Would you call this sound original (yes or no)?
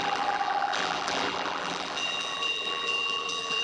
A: no